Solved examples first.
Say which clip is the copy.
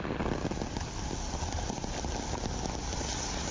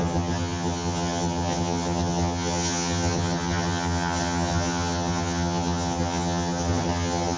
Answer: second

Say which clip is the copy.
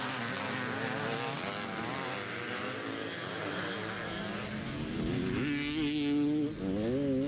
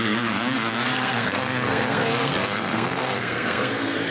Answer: second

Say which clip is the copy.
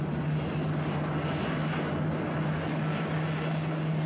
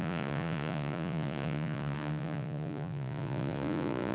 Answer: second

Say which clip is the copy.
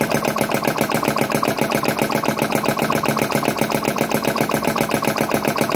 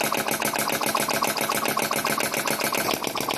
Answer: first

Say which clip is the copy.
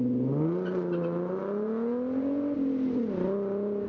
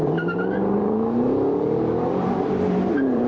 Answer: second